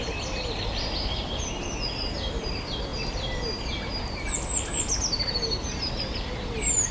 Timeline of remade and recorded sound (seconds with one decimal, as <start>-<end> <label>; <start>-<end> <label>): 0.0-6.9 recorded

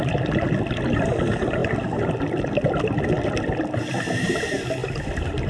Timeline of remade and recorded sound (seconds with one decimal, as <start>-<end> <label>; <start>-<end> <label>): 0.0-5.5 recorded

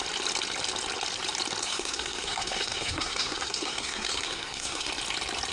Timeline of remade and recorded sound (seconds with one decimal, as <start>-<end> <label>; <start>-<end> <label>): 0.0-1.6 recorded; 1.6-4.9 remade; 4.9-5.5 recorded

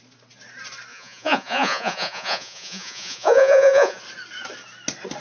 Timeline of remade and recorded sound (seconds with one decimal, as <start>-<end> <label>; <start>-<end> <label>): 0.0-0.9 recorded; 0.9-4.0 remade; 4.0-5.2 recorded

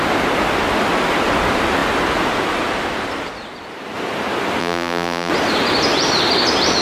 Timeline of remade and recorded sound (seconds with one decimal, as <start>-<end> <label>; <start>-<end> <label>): 0.0-4.6 recorded; 4.6-5.3 remade; 5.3-6.8 recorded

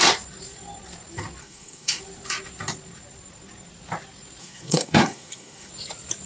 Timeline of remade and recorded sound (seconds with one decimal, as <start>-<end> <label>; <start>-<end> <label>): 0.0-1.4 recorded; 1.4-2.0 remade; 2.0-4.4 recorded; 4.4-5.7 remade; 5.7-6.3 recorded

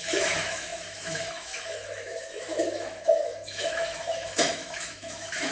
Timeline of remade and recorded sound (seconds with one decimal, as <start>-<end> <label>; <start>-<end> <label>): 0.0-5.5 remade